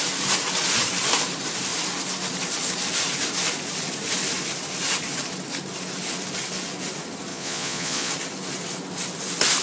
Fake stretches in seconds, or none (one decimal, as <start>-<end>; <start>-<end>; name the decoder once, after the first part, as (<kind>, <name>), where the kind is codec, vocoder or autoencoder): 7.3-8.1 (vocoder, Vocos)